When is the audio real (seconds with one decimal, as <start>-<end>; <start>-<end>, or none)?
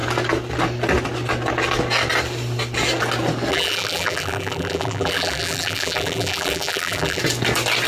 0.0-3.5; 7.2-7.9